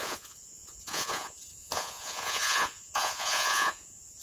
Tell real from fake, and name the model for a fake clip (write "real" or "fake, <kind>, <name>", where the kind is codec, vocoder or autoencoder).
fake, vocoder, Vocos